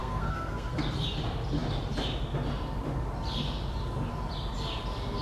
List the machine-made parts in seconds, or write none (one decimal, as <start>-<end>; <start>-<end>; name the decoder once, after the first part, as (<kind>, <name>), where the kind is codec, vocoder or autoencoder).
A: 0.0-0.8 (codec, SNAC)